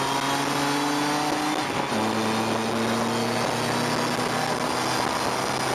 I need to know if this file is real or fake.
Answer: real